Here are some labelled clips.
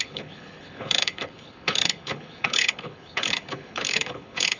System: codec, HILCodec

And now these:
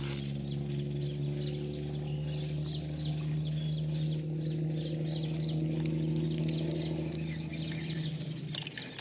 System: none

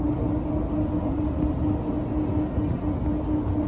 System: none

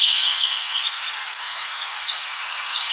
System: codec, SNAC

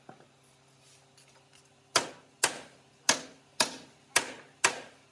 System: none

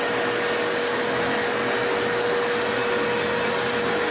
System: none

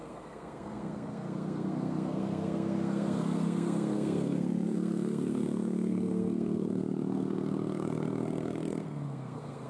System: codec, SNAC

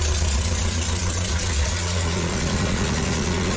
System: vocoder, Vocos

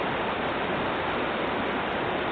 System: vocoder, BigVGAN v2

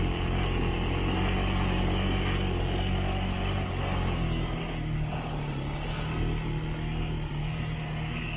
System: none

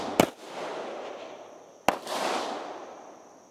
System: none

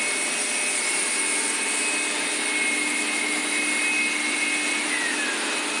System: none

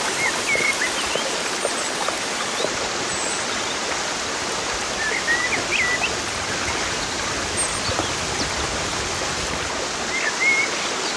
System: none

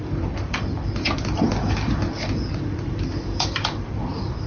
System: vocoder, BigVGAN v2